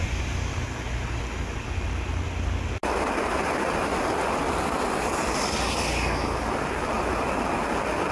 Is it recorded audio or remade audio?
recorded